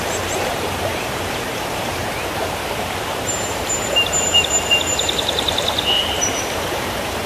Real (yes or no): no